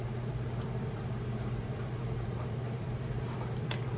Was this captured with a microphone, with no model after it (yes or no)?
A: no